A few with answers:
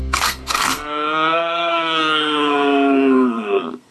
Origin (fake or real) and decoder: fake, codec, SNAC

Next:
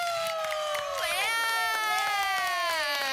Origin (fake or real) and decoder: real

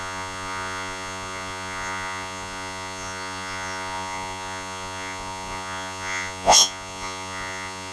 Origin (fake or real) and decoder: fake, vocoder, Vocos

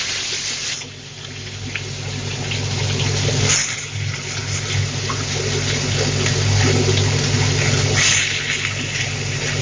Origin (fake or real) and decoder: real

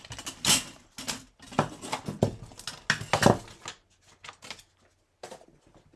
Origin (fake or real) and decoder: real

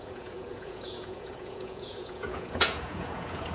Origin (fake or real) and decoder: fake, vocoder, Vocos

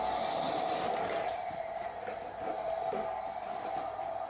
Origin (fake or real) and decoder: real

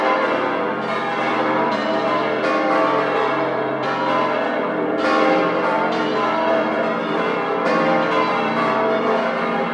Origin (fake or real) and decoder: fake, vocoder, BigVGAN v2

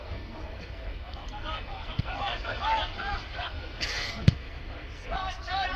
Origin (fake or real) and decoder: fake, codec, SNAC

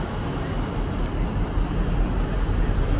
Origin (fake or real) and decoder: real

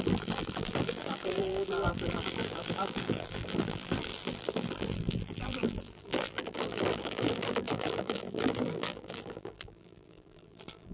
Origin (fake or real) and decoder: fake, vocoder, BigVGAN v2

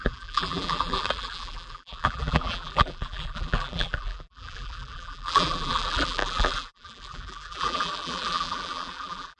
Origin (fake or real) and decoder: fake, vocoder, BigVGAN v2